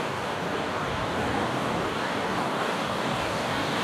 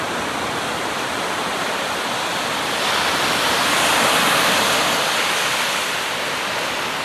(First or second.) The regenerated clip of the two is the first